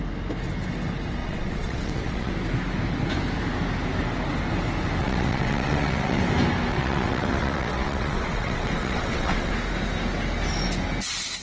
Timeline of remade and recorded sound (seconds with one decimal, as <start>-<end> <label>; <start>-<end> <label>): 0.0-1.2 recorded; 1.2-2.3 remade; 2.3-5.0 recorded; 5.0-6.2 remade; 6.2-6.7 recorded; 6.7-9.5 remade; 9.5-11.4 recorded